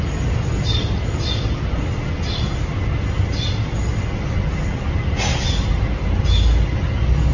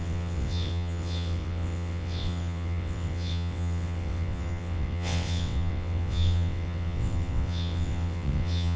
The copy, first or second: second